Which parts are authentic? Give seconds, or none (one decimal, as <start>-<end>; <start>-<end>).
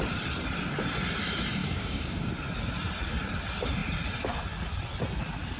0.0-1.6; 2.3-5.6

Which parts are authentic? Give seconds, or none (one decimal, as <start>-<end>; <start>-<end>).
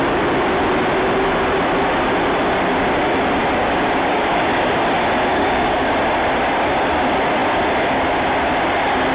0.0-3.6; 4.7-5.3; 5.9-9.1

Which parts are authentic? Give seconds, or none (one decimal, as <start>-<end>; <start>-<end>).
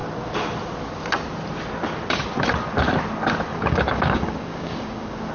0.0-3.5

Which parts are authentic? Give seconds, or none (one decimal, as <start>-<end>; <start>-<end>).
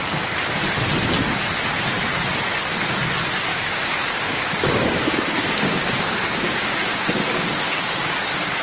0.0-3.5